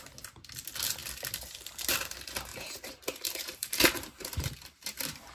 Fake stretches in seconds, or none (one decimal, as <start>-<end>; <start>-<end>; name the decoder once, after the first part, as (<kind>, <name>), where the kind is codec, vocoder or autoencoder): 2.5-5.3 (vocoder, BigVGAN v2)

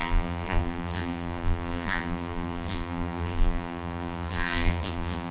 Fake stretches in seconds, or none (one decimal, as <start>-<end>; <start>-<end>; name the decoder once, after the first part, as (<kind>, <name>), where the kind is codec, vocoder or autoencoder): 0.0-5.3 (vocoder, BigVGAN v2)

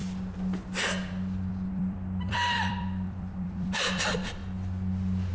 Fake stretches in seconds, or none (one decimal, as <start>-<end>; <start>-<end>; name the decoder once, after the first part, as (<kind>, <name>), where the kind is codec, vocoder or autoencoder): 1.5-4.4 (vocoder, BigVGAN v2)